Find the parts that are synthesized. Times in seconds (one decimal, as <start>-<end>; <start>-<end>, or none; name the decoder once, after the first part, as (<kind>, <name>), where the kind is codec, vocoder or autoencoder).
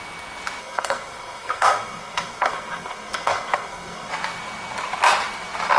0.6-4.1 (codec, SNAC)